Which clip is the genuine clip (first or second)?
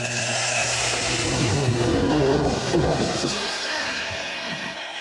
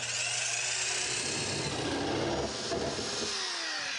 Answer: second